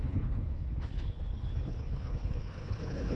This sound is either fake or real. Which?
fake